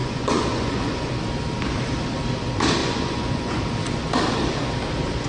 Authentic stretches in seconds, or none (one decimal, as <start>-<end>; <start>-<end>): 1.1-2.8; 3.6-5.3